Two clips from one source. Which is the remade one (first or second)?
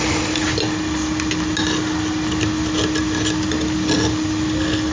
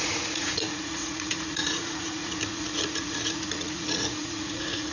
second